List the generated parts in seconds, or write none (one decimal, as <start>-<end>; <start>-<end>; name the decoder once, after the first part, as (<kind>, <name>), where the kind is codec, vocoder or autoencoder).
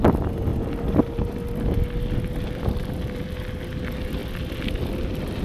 none